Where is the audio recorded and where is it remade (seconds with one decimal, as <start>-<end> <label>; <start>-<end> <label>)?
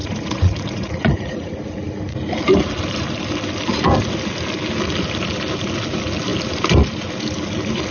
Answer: 0.0-1.6 remade; 1.6-7.9 recorded